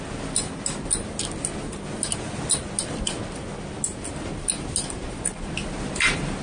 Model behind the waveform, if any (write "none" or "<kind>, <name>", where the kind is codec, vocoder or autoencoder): none